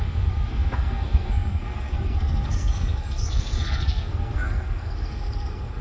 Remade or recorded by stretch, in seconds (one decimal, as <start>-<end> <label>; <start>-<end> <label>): 0.0-5.8 remade